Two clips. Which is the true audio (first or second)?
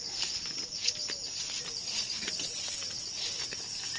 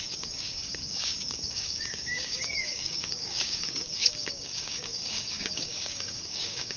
first